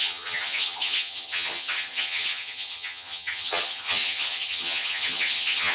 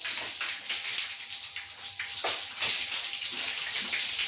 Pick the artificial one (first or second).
first